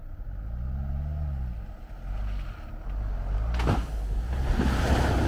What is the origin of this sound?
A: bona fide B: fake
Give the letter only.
A